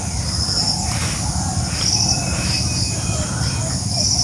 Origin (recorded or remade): recorded